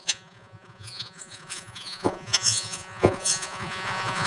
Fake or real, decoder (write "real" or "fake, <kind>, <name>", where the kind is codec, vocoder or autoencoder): fake, vocoder, Vocos